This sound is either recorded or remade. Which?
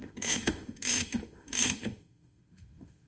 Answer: remade